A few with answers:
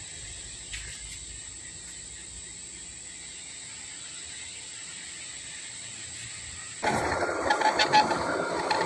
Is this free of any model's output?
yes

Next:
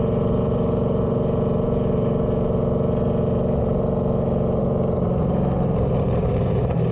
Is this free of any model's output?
no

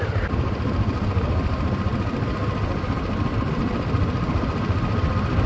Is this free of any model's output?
yes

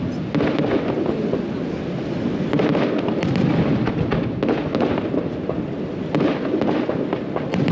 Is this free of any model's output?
yes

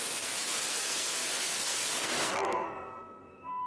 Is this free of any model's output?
no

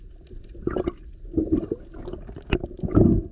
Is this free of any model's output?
yes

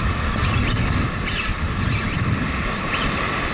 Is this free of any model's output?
yes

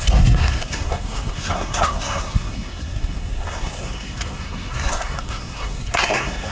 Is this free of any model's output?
no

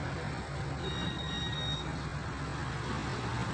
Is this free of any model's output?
yes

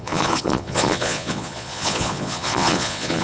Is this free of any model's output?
no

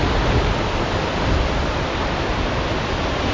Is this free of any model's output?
no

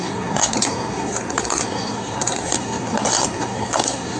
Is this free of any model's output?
no